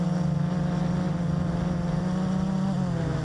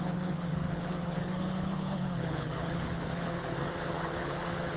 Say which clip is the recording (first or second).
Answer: first